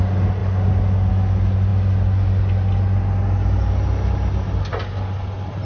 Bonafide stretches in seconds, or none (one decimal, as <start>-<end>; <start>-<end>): 0.0-5.7